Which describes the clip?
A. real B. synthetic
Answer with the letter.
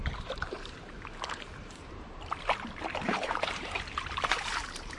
B